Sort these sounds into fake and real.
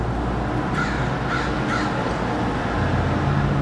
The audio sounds real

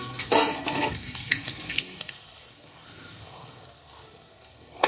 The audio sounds fake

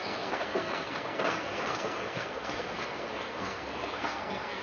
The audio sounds fake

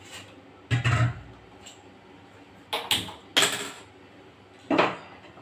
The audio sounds real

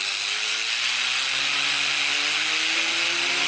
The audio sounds real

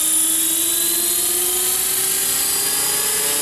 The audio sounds real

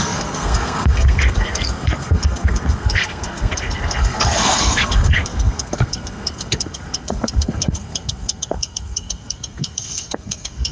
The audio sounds fake